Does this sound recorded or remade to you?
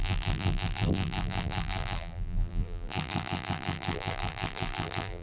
remade